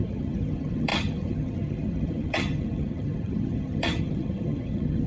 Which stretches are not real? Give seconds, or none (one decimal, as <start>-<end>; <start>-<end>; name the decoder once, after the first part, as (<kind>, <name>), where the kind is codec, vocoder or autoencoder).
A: 0.0-5.1 (vocoder, HiFi-GAN)

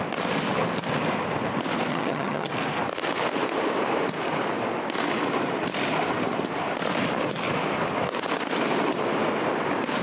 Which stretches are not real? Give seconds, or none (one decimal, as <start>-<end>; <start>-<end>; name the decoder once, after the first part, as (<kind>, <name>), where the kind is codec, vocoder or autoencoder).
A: 1.9-2.5 (vocoder, HiFi-GAN)

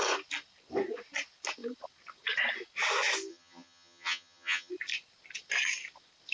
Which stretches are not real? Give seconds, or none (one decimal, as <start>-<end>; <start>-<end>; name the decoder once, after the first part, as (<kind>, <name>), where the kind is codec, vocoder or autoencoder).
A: 3.3-4.7 (vocoder, HiFi-GAN)

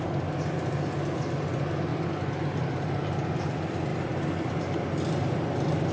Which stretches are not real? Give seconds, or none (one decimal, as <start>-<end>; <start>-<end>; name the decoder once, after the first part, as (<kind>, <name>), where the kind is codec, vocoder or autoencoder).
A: none

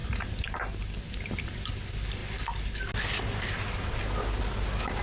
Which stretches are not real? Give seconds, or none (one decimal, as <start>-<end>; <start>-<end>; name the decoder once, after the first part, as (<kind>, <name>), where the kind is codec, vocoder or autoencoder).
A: none

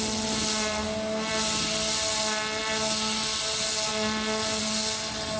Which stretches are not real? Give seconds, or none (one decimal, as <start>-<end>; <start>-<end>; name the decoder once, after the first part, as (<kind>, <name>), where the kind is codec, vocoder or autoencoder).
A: none

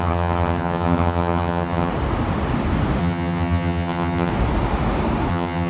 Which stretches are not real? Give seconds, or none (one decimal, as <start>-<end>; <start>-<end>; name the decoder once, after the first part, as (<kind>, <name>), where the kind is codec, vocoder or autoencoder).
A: 0.0-1.9 (vocoder, HiFi-GAN); 3.0-4.3; 5.3-5.7

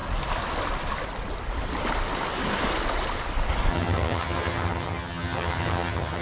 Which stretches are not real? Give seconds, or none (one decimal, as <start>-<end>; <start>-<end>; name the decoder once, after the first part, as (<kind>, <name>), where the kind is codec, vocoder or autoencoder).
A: 3.7-6.2 (vocoder, HiFi-GAN)